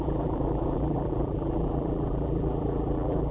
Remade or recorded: remade